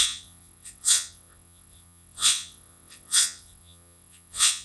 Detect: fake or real fake